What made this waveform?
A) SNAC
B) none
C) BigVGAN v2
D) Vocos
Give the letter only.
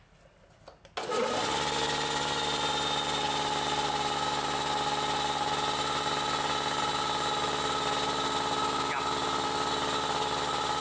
B